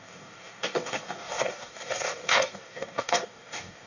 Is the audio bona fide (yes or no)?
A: no